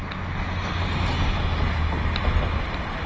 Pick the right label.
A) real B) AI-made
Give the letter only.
A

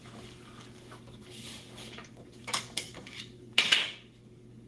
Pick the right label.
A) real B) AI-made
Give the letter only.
B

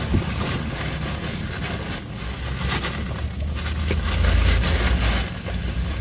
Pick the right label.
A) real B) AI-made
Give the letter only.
A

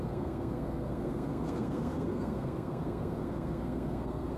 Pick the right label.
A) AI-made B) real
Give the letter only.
A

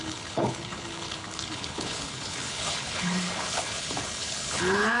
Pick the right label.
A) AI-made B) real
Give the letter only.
A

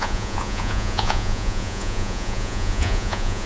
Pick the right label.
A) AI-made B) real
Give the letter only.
A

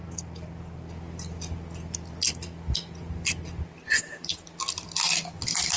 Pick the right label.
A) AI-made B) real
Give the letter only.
B